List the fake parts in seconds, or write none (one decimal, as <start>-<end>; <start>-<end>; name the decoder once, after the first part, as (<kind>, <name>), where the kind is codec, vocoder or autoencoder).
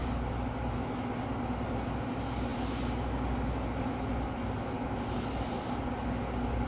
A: none